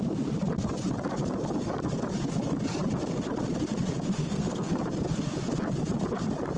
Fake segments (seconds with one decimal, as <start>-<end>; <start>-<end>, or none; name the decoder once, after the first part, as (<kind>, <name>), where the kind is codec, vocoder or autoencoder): 4.2-4.8 (codec, SNAC)